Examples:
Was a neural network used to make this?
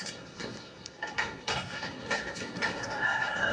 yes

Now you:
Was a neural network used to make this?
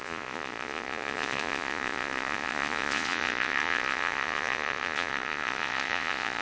yes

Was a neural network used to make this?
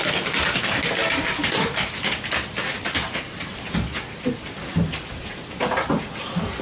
no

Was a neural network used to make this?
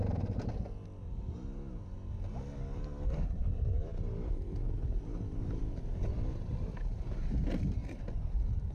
no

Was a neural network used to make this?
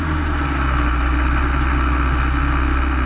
no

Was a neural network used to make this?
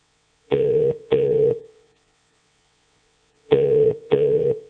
yes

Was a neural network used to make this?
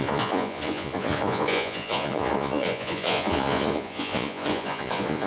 yes